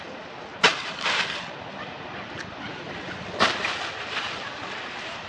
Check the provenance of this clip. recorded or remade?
recorded